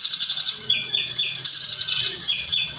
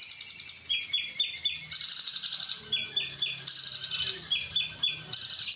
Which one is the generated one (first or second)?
first